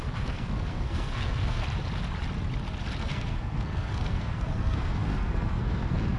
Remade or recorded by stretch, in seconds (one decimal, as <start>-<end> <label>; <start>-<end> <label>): 0.0-1.6 remade; 1.6-3.0 recorded; 3.0-6.2 remade